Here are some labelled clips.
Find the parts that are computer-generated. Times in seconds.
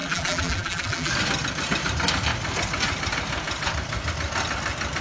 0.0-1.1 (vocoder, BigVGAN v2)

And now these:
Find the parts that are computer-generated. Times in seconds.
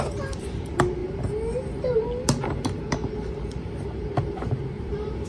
0.0-1.0 (vocoder, BigVGAN v2); 3.6-5.3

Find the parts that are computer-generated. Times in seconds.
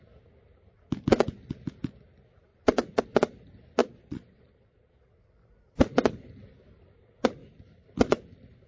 2.5-3.0 (vocoder, Vocos); 3.8-5.1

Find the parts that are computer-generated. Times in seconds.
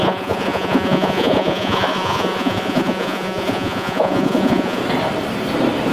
0.0-4.8 (vocoder, Vocos)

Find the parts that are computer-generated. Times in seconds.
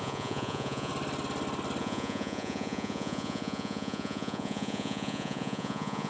0.0-0.9 (vocoder, Vocos); 1.8-6.1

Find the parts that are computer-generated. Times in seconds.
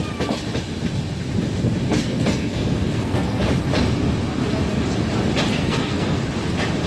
1.9-3.4 (codec, SNAC); 5.5-6.2